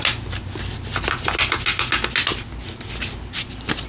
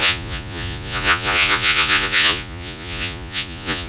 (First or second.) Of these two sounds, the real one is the first